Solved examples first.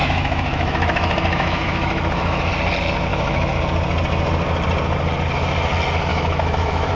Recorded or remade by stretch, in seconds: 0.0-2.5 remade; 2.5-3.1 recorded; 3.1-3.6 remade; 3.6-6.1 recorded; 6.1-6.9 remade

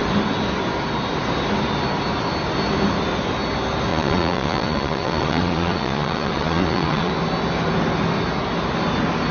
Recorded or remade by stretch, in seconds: 0.0-3.9 recorded; 3.9-7.1 remade; 7.1-9.3 recorded

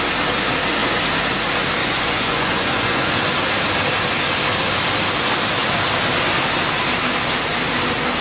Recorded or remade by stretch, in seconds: 0.0-1.8 recorded; 1.8-3.1 remade; 3.1-8.2 recorded

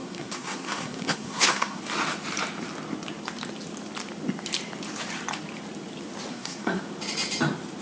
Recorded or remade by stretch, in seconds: 0.0-1.8 remade; 1.8-6.3 recorded; 6.3-6.8 remade; 6.8-7.8 recorded